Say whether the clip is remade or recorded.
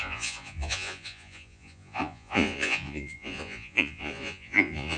remade